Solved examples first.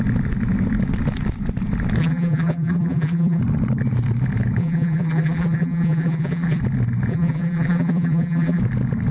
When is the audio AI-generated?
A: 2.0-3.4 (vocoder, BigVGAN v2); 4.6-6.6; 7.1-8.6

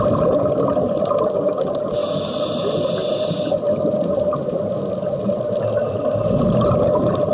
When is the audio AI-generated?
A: none

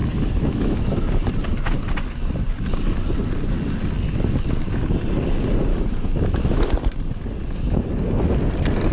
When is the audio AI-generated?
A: 0.0-1.1 (autoencoder, DAC-VAE); 5.7-6.6